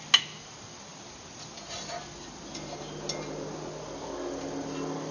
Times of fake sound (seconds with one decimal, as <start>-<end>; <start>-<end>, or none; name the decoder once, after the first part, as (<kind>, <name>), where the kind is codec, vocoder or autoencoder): none